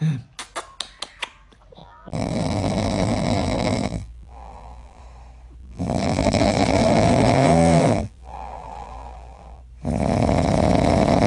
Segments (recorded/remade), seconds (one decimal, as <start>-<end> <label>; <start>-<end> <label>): 0.0-1.8 recorded; 1.8-5.0 remade; 5.0-5.6 recorded; 5.6-9.6 remade; 9.6-11.3 recorded